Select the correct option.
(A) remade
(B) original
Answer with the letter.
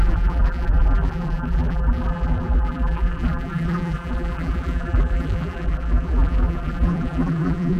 A